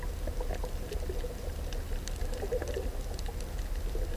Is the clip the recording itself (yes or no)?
yes